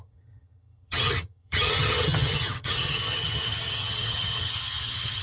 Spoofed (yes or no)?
yes